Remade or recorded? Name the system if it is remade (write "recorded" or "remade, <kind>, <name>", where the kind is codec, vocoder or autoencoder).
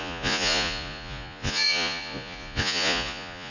remade, vocoder, Vocos